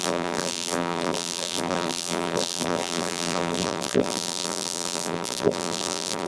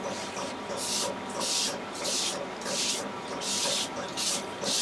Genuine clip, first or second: second